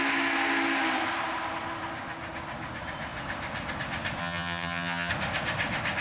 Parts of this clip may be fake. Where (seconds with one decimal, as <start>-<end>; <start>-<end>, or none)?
4.2-5.1